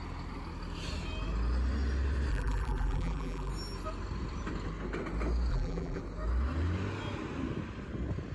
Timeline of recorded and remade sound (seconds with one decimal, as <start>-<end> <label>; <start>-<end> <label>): 0.0-2.3 recorded; 2.3-3.5 remade; 3.5-5.5 recorded; 5.5-6.0 remade; 6.0-8.3 recorded